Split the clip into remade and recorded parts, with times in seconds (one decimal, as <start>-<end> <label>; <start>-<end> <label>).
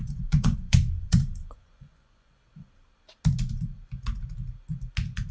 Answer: 0.0-2.4 remade; 2.4-5.3 recorded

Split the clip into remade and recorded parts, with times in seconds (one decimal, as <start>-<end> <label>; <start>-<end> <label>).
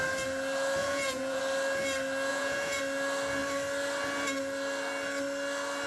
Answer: 0.0-0.8 recorded; 0.8-1.4 remade; 1.4-2.3 recorded; 2.3-2.8 remade; 2.8-5.9 recorded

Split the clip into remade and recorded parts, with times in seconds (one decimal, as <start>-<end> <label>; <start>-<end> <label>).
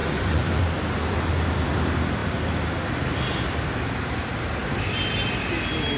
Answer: 0.0-0.6 remade; 0.6-6.0 recorded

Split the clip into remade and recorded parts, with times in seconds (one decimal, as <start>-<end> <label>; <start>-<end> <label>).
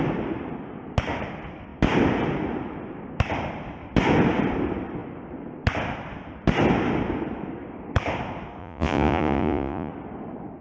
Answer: 0.0-8.6 recorded; 8.6-9.9 remade; 9.9-10.6 recorded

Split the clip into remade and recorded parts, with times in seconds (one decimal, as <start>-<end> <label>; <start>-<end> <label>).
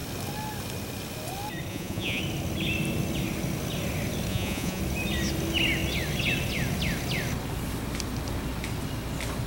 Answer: 0.0-1.7 recorded; 1.7-2.2 remade; 2.2-4.3 recorded; 4.3-4.8 remade; 4.8-9.5 recorded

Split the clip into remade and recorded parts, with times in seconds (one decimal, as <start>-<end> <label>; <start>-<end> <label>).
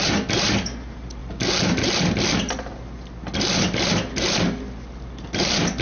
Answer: 0.0-5.8 recorded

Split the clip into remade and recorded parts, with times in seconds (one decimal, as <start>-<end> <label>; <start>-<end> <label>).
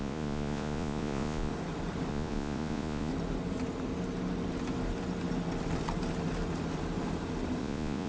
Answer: 0.0-1.5 remade; 1.5-2.1 recorded; 2.1-3.1 remade; 3.1-7.6 recorded; 7.6-8.1 remade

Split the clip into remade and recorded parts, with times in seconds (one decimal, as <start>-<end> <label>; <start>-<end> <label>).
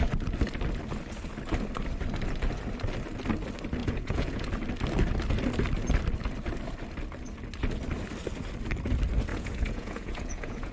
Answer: 0.0-3.8 recorded; 3.8-4.5 remade; 4.5-9.3 recorded; 9.3-10.7 remade